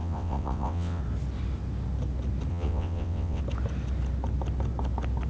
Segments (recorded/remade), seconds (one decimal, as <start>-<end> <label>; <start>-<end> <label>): 0.0-1.0 remade; 1.0-2.5 recorded; 2.5-3.4 remade; 3.4-5.3 recorded